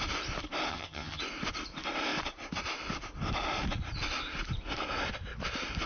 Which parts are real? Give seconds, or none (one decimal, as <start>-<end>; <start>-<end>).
0.0-0.7; 1.2-5.9